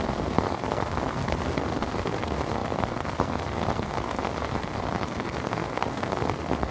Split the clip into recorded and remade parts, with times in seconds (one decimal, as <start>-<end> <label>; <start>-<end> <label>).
0.0-6.7 remade